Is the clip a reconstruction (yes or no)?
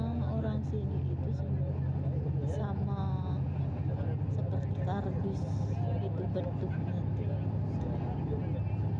no